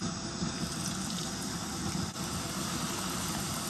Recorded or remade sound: recorded